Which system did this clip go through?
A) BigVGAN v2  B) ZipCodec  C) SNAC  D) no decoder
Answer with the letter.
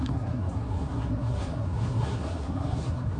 C